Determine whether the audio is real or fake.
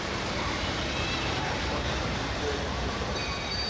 fake